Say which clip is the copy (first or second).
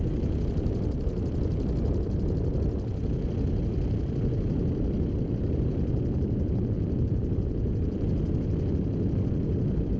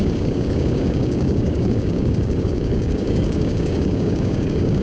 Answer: second